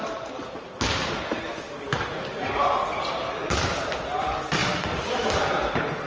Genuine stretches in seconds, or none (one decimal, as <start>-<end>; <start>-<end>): 0.0-6.1

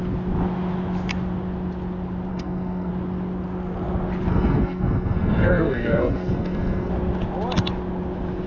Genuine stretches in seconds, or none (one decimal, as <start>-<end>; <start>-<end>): 0.0-2.3; 2.9-4.3; 6.9-8.5